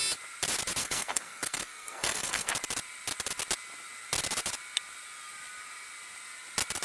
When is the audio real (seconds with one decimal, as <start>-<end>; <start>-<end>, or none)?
0.0-0.8; 2.5-6.8